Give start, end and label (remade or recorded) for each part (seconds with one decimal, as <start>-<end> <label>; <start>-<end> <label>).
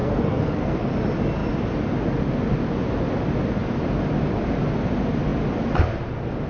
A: 0.0-0.9 remade; 0.9-6.5 recorded